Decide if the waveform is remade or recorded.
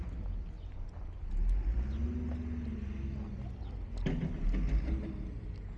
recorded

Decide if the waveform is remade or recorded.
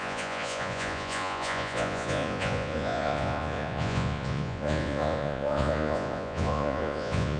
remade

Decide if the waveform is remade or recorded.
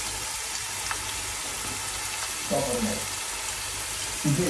recorded